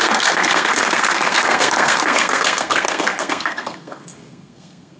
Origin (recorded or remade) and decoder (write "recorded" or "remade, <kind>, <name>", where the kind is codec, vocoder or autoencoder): remade, codec, SNAC